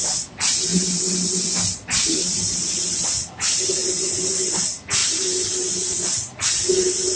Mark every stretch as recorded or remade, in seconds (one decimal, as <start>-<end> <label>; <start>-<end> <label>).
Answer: 0.0-7.2 recorded